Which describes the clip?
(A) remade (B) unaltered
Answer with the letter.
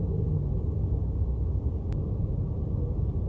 B